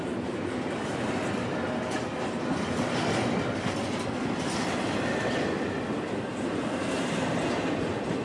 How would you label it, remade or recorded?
recorded